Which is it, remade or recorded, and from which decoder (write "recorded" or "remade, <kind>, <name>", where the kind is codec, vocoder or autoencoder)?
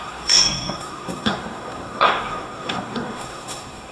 remade, codec, SNAC